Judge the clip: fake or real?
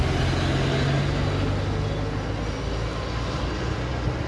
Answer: real